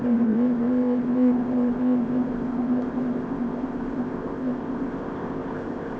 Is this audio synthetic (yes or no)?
yes